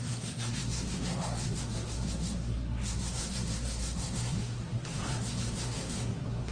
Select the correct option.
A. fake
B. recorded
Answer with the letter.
A